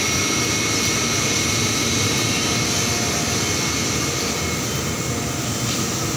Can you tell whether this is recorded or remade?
recorded